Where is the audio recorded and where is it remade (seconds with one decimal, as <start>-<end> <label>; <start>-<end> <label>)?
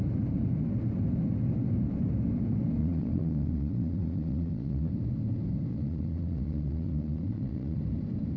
0.0-2.8 recorded; 2.8-4.9 remade; 4.9-5.7 recorded; 5.7-7.8 remade; 7.8-8.4 recorded